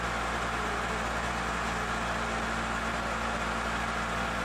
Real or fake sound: real